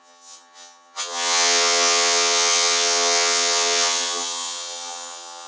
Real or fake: fake